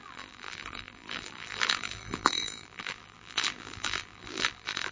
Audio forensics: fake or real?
fake